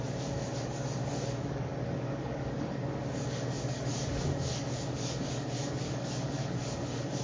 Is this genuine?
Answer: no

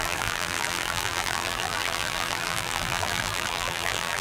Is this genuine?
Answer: no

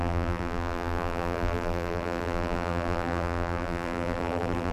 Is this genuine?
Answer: no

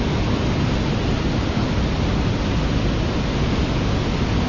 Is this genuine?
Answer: yes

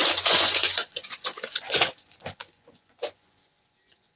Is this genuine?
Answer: no